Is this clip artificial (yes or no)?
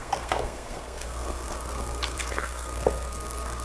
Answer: yes